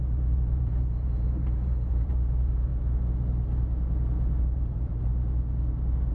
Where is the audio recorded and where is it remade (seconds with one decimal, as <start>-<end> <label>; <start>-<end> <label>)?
0.0-2.7 remade; 2.7-4.4 recorded; 4.4-5.1 remade; 5.1-6.1 recorded